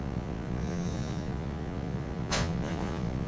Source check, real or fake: fake